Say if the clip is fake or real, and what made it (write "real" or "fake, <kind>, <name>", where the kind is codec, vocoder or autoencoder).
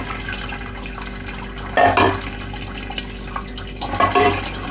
real